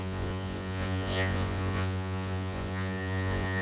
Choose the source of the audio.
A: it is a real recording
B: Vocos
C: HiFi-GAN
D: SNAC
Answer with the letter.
B